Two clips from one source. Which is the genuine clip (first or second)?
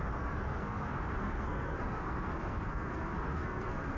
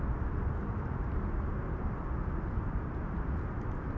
second